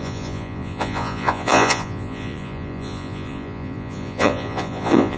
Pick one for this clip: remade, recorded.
remade